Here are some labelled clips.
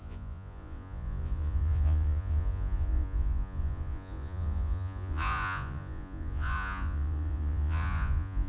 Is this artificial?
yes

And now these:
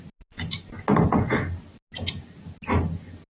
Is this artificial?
no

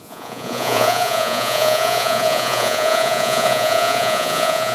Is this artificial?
yes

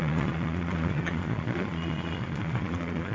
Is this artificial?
yes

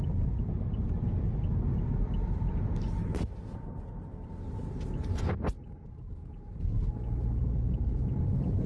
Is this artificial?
no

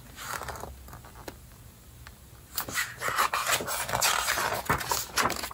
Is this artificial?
no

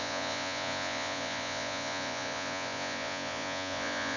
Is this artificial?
yes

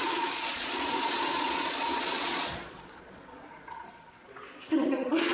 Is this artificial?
yes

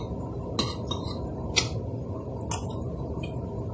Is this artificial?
no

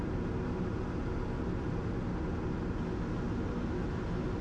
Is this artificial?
no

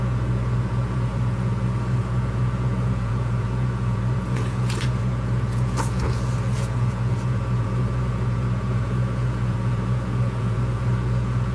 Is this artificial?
yes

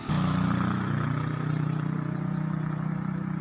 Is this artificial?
no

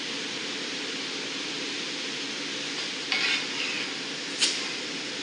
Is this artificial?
no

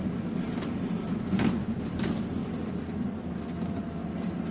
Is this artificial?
no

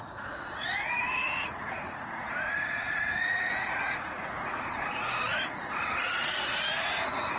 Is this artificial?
yes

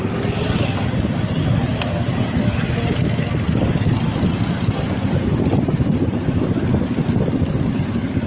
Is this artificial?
no